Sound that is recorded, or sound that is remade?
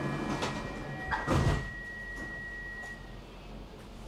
recorded